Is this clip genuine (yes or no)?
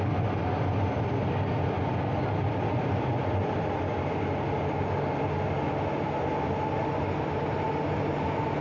yes